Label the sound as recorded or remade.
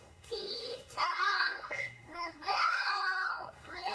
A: remade